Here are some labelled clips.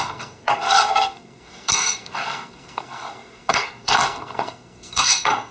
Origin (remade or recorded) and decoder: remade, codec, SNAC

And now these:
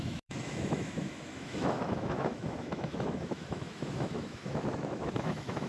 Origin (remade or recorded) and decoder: remade, autoencoder, DAC-VAE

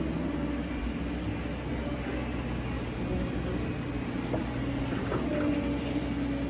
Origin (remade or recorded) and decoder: recorded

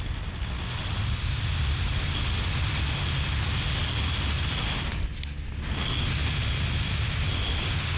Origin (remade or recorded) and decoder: recorded